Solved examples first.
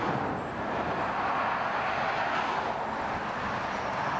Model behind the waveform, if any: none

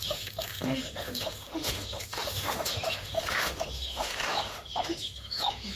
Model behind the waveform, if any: autoencoder, DAC-VAE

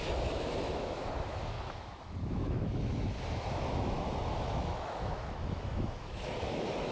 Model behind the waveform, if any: autoencoder, DAC-VAE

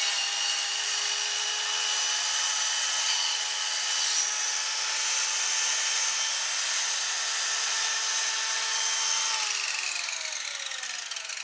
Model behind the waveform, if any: none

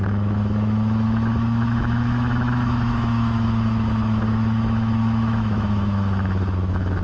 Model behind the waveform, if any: autoencoder, DAC-VAE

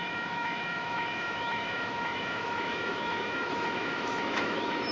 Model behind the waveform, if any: autoencoder, DAC-VAE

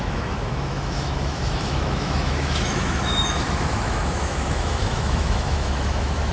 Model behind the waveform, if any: autoencoder, DAC-VAE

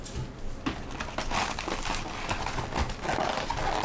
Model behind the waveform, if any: none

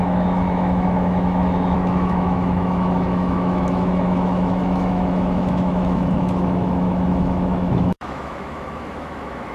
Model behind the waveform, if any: autoencoder, DAC-VAE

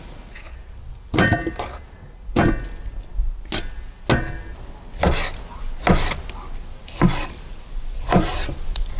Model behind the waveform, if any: none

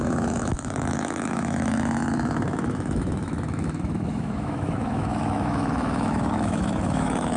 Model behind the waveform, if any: autoencoder, DAC-VAE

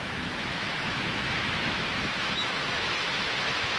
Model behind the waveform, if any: autoencoder, DAC-VAE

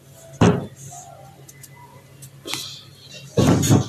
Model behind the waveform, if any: none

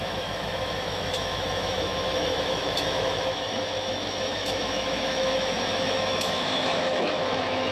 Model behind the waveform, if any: autoencoder, DAC-VAE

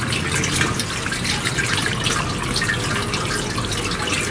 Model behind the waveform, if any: none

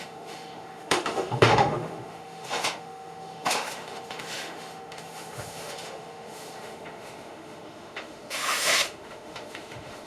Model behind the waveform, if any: autoencoder, DAC-VAE